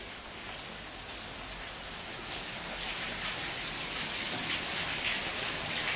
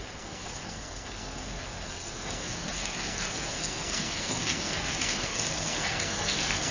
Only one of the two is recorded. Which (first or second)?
first